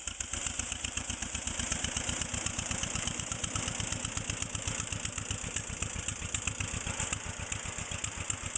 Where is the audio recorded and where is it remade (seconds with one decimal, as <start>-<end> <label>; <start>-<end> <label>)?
0.0-0.4 recorded; 0.4-3.5 remade; 3.5-8.6 recorded